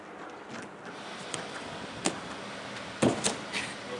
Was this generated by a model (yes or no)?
yes